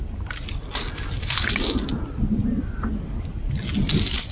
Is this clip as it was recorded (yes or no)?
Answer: yes